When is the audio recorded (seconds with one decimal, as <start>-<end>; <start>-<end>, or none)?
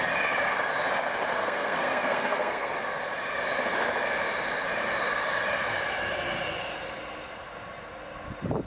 0.0-1.4; 2.7-8.7